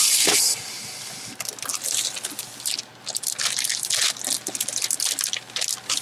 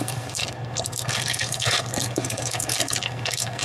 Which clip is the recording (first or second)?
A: first